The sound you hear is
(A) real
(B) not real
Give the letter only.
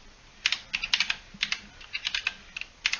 A